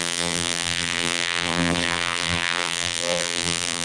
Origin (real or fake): fake